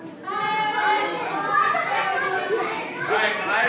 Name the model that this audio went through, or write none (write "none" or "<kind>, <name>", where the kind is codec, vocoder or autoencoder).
none